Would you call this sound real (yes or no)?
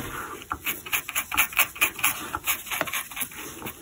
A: yes